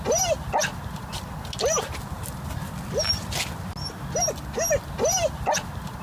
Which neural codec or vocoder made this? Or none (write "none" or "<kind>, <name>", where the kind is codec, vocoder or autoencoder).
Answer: none